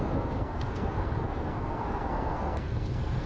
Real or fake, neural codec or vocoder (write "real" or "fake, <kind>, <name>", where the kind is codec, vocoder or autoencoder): fake, codec, SNAC